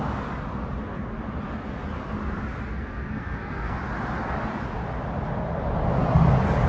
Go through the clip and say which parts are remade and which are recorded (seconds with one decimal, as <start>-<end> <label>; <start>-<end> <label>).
0.0-2.7 recorded; 2.7-3.8 remade; 3.8-6.7 recorded